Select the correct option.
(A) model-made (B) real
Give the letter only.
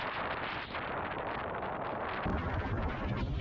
B